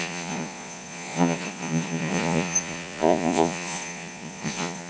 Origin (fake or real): fake